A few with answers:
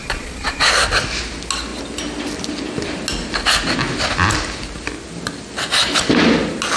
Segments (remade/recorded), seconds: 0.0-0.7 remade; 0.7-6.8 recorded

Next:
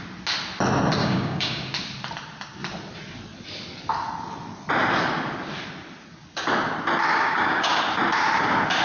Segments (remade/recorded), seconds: 0.0-1.0 recorded; 1.0-1.7 remade; 1.7-7.1 recorded; 7.1-7.8 remade; 7.8-8.8 recorded